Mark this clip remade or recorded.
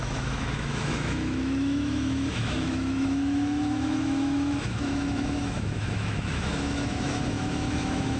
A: remade